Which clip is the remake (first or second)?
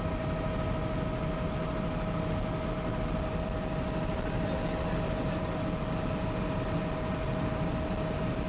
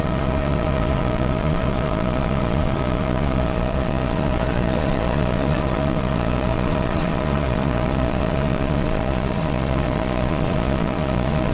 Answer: second